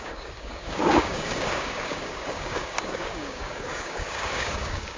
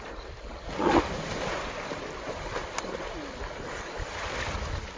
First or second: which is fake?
first